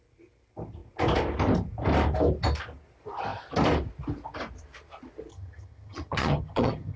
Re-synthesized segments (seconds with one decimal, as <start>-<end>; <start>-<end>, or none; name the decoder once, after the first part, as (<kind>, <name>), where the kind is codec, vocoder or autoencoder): 5.3-7.0 (vocoder, HiFi-GAN)